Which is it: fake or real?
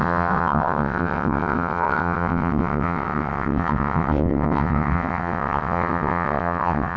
fake